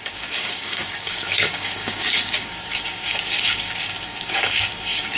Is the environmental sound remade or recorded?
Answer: remade